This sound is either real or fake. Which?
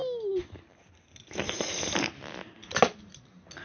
real